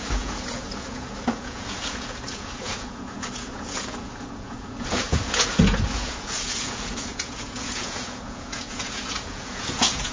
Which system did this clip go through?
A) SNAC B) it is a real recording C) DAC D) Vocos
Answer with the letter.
D